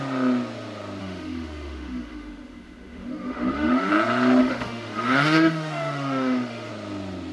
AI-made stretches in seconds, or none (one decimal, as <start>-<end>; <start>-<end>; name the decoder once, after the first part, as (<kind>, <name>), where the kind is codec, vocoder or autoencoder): 1.0-3.9 (autoencoder, DAC-VAE); 4.4-6.7